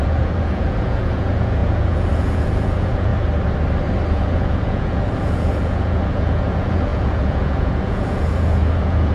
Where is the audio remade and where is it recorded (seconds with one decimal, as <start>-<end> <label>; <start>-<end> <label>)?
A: 0.0-3.1 remade; 3.1-4.1 recorded; 4.1-9.1 remade